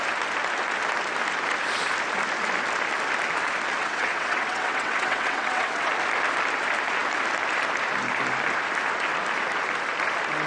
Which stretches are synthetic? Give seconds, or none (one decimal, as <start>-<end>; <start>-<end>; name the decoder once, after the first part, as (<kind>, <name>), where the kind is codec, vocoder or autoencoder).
3.8-5.9 (vocoder, WaveNeXt)